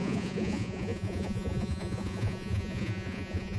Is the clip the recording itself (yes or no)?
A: no